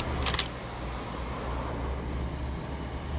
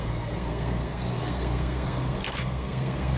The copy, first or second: second